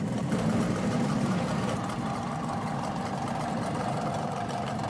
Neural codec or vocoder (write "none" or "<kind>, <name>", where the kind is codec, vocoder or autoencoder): vocoder, BigVGAN v2